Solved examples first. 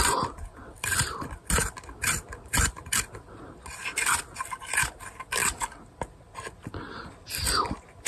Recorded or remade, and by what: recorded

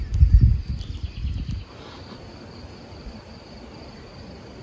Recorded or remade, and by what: recorded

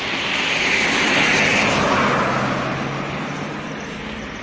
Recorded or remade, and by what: recorded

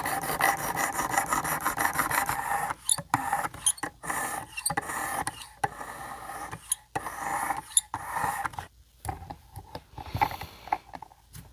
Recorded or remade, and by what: recorded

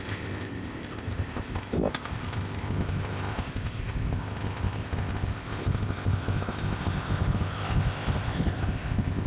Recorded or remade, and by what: remade, codec, ZipCodec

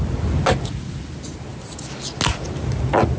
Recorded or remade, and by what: recorded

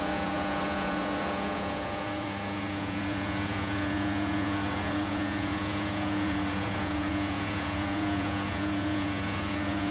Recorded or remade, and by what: remade, vocoder, Vocos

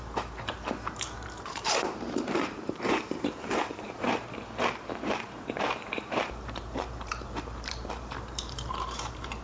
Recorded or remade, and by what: remade, vocoder, BigVGAN v2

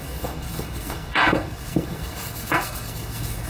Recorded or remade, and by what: remade, codec, SNAC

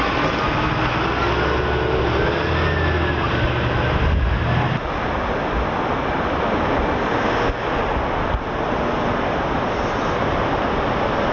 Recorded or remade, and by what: recorded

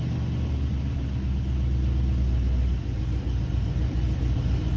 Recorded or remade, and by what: recorded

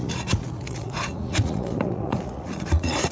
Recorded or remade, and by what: remade, vocoder, Vocos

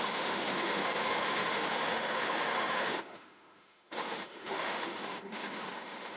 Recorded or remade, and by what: remade, autoencoder, DAC-VAE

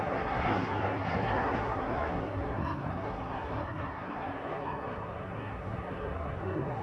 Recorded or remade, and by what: remade, codec, SNAC